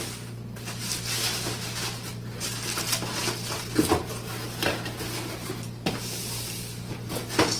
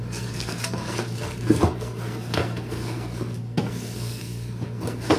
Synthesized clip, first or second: second